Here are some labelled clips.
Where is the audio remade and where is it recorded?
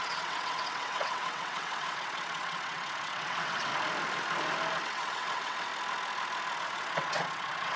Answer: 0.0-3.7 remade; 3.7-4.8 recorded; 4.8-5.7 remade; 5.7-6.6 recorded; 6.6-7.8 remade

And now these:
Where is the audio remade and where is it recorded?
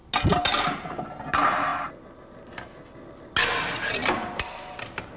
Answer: 0.0-5.2 recorded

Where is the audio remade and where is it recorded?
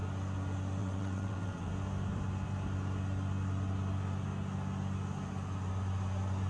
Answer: 0.0-0.8 recorded; 0.8-1.7 remade; 1.7-6.5 recorded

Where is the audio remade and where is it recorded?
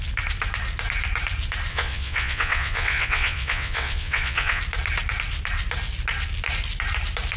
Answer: 0.0-1.7 recorded; 1.7-4.6 remade; 4.6-7.4 recorded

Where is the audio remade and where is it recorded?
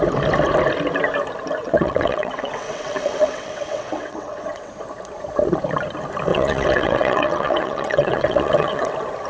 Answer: 0.0-1.6 recorded; 1.6-4.7 remade; 4.7-6.3 recorded; 6.3-8.9 remade; 8.9-9.3 recorded